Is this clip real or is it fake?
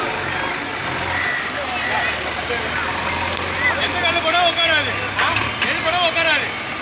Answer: real